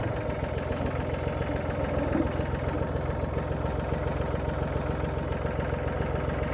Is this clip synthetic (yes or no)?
no